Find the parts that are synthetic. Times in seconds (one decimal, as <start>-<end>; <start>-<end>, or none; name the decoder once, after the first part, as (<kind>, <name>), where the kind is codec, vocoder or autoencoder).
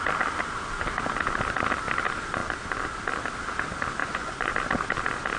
4.0-4.5 (vocoder, Vocos)